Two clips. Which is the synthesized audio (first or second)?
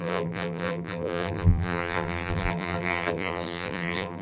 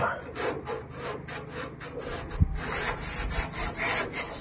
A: first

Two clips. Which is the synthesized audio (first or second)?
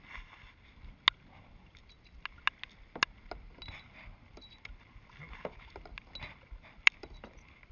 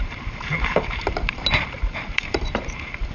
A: second